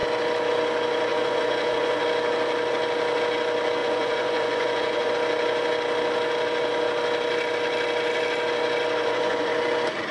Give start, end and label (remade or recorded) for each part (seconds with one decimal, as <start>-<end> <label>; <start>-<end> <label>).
0.0-1.1 recorded; 1.1-2.0 remade; 2.0-3.8 recorded; 3.8-5.1 remade; 5.1-9.0 recorded; 9.0-9.5 remade; 9.5-10.1 recorded